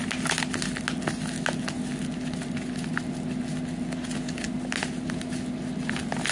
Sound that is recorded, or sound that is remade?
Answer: recorded